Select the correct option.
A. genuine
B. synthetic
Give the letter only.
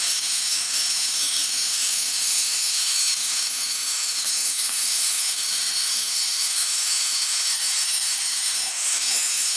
B